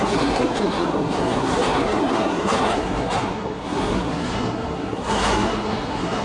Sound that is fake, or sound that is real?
fake